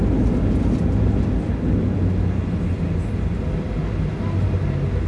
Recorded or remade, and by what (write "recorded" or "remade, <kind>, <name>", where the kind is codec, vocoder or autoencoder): recorded